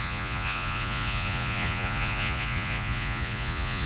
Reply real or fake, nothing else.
fake